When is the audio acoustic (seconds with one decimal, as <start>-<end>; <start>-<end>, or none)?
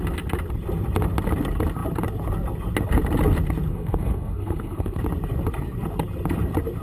0.0-3.7; 5.0-6.8